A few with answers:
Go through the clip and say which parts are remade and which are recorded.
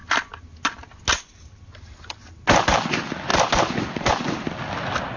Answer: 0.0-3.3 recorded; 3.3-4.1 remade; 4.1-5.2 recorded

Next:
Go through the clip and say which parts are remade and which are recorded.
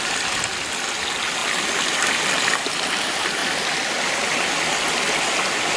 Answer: 0.0-5.8 recorded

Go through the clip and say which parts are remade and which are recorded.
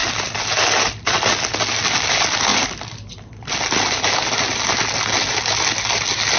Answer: 0.0-2.5 recorded; 2.5-3.6 remade; 3.6-6.4 recorded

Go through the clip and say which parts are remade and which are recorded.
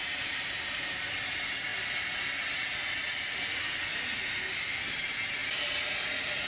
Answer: 0.0-1.7 remade; 1.7-4.9 recorded; 4.9-5.4 remade; 5.4-6.5 recorded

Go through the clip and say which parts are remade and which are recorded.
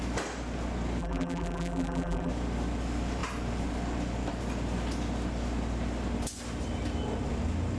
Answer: 0.0-1.0 recorded; 1.0-2.3 remade; 2.3-7.8 recorded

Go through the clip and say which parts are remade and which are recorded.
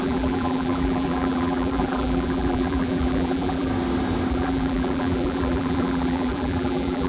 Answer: 0.0-3.7 remade; 3.7-4.3 recorded; 4.3-7.1 remade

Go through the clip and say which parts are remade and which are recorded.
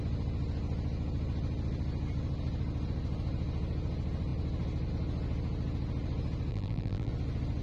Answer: 0.0-6.5 recorded; 6.5-7.1 remade; 7.1-7.6 recorded